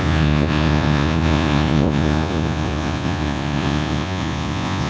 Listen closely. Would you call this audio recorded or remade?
remade